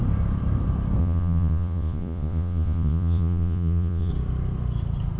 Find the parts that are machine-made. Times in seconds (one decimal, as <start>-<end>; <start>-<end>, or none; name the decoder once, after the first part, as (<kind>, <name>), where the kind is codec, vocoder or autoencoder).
1.0-4.1 (vocoder, Vocos)